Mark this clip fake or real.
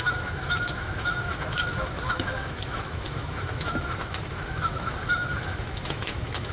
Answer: fake